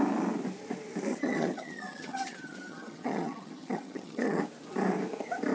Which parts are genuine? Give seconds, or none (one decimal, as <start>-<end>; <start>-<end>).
0.0-1.1; 4.4-5.5